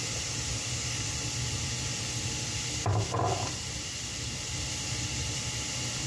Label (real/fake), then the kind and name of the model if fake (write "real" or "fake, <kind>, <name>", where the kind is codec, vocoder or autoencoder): fake, vocoder, BigVGAN v2